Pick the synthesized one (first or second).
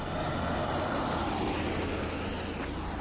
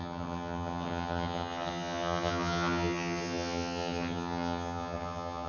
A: second